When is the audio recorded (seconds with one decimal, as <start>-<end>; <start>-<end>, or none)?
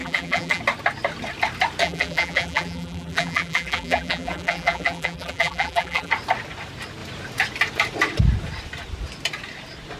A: 0.6-1.8; 6.1-10.0